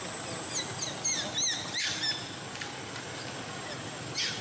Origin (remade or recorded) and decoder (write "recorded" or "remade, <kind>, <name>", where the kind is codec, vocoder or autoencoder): recorded